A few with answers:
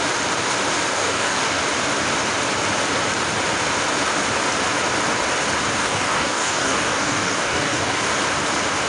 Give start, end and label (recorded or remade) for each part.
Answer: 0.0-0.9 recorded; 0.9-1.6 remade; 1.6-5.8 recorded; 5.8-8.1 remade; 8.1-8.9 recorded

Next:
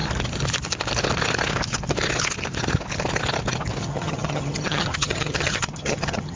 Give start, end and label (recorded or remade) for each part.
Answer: 0.0-3.8 recorded; 3.8-6.4 remade

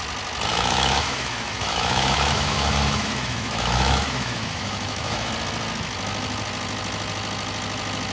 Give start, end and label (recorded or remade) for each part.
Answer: 0.0-0.5 recorded; 0.5-5.3 remade; 5.3-8.1 recorded

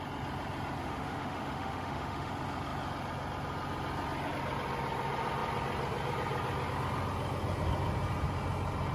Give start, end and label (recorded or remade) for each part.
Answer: 0.0-0.8 recorded; 0.8-2.3 remade; 2.3-8.9 recorded